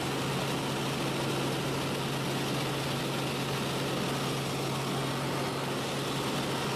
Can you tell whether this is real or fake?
real